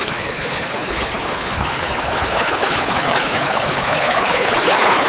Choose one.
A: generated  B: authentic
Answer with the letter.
A